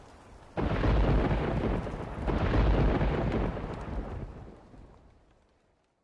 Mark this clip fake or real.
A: real